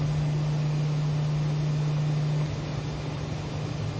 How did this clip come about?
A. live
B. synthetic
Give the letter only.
A